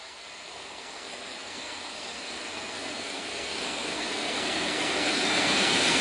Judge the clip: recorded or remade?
remade